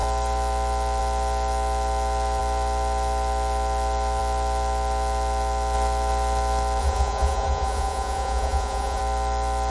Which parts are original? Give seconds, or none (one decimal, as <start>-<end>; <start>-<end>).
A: 0.0-6.8; 9.0-9.7